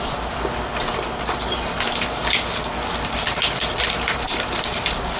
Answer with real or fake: fake